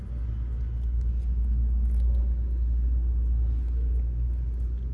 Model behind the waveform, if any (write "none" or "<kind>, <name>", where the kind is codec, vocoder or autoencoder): none